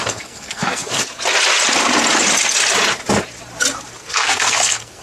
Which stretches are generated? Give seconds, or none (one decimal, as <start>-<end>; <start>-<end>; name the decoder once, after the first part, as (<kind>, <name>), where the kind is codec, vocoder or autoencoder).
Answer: 0.0-1.0 (codec, SNAC); 4.0-5.0